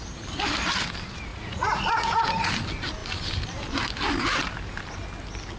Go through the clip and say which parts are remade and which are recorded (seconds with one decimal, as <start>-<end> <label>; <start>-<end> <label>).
0.0-1.3 recorded; 1.3-2.5 remade; 2.5-5.6 recorded